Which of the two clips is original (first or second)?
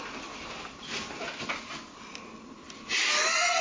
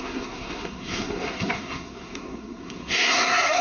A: first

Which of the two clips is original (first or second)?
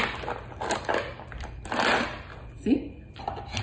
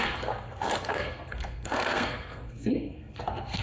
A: first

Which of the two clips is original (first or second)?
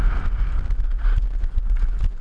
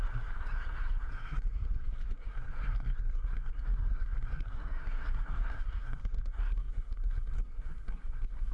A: first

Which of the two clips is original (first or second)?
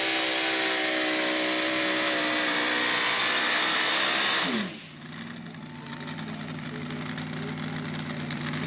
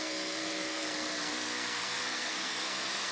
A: first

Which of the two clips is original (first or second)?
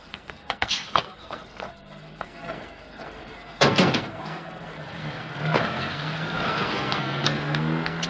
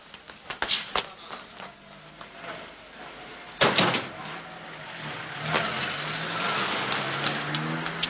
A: second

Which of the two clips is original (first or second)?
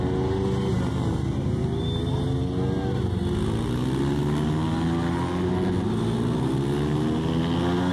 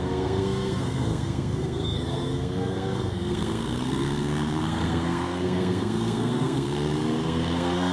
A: first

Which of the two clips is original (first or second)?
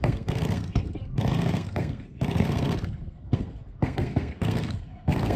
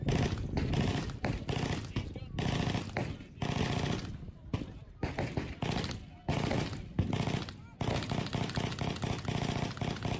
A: second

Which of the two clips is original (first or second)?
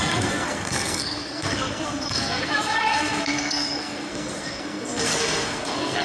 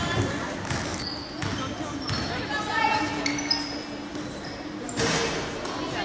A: second